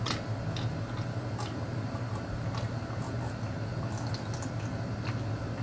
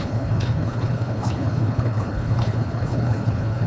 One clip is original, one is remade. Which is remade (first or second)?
second